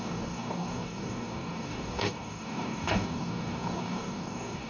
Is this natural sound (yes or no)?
no